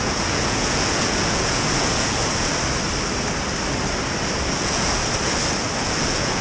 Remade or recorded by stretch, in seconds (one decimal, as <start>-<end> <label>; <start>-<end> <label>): 0.0-2.2 remade; 2.2-4.5 recorded; 4.5-5.0 remade; 5.0-5.8 recorded; 5.8-6.4 remade